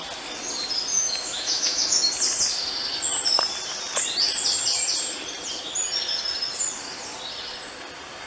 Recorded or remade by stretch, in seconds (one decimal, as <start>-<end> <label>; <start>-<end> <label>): 0.0-0.9 recorded; 0.9-2.1 remade; 2.1-8.3 recorded